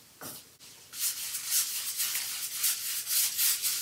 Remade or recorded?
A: recorded